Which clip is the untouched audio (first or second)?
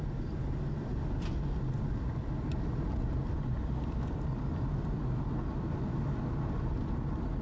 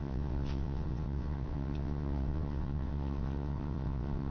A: first